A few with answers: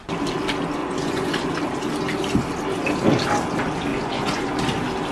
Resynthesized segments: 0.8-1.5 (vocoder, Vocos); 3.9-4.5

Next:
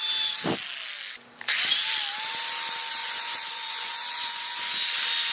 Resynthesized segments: 3.0-4.8 (vocoder, Vocos)

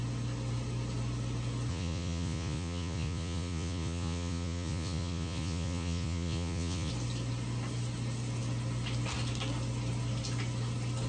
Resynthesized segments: 1.7-6.9 (vocoder, Vocos)

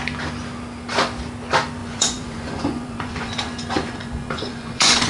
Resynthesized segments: 1.8-5.1 (vocoder, Vocos)

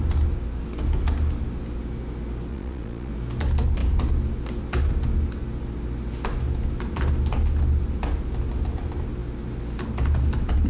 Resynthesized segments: 2.5-3.1 (vocoder, Vocos)

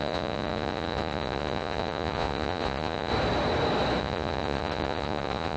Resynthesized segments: 0.0-3.1 (vocoder, Vocos); 4.0-5.6